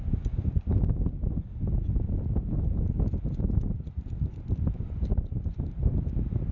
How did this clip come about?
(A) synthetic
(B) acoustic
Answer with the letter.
B